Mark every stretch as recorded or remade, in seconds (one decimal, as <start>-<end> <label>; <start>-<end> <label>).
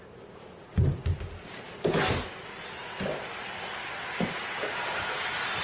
0.0-0.7 remade; 0.7-4.1 recorded; 4.1-5.6 remade